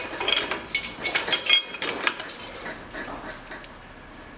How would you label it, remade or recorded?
recorded